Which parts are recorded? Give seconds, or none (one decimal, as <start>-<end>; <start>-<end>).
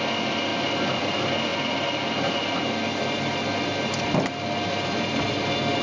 0.0-5.8